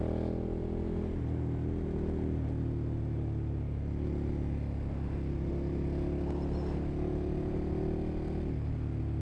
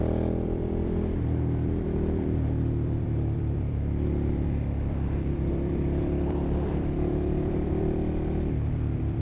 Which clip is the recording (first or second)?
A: first